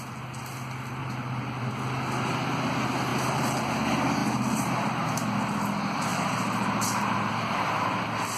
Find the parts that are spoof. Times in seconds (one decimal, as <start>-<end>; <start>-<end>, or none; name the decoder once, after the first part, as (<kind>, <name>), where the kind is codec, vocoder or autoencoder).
1.0-1.7 (vocoder, BigVGAN v2); 3.1-3.6; 4.2-5.1; 6.1-7.3